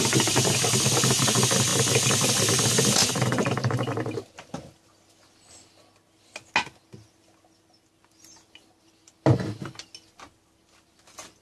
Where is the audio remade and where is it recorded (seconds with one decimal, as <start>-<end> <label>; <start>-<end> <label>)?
0.0-11.4 recorded